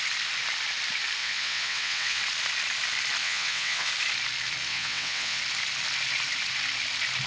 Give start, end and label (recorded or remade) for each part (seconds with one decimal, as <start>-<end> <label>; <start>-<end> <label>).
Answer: 0.0-1.2 recorded; 1.2-2.2 remade; 2.2-3.2 recorded; 3.2-3.9 remade; 3.9-4.7 recorded; 4.7-5.4 remade; 5.4-7.3 recorded